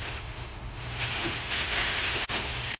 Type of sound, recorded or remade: remade